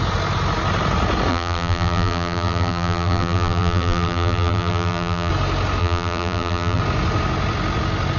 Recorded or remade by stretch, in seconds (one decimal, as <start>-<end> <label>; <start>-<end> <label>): 0.0-1.3 recorded; 1.3-5.3 remade; 5.3-5.8 recorded; 5.8-6.8 remade; 6.8-8.2 recorded